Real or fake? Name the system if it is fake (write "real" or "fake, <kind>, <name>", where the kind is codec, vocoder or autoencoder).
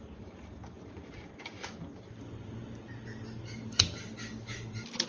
real